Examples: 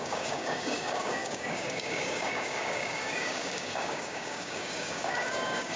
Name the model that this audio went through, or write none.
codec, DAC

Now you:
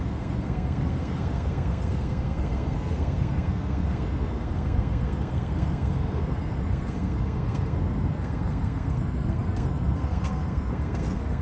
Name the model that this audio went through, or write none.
codec, SNAC